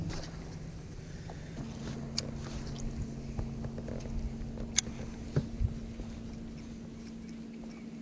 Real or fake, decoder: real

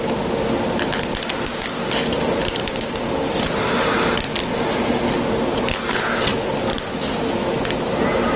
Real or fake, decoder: real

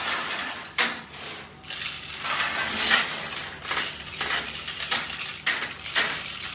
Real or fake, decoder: real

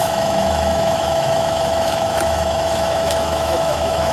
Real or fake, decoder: fake, autoencoder, DAC-VAE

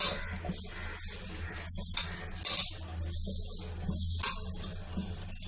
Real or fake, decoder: real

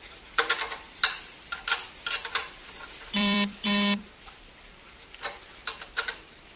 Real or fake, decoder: fake, vocoder, BigVGAN v2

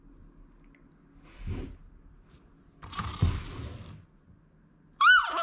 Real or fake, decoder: real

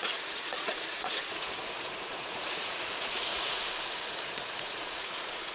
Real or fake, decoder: fake, vocoder, Vocos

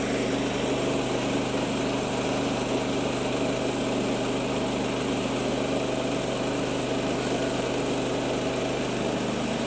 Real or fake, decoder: real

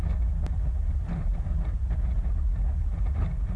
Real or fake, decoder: real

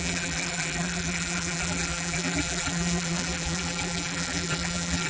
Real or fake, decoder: fake, vocoder, BigVGAN v2